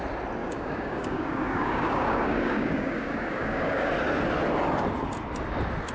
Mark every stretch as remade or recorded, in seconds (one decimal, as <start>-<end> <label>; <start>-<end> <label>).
0.0-0.4 recorded; 0.4-3.9 remade; 3.9-5.9 recorded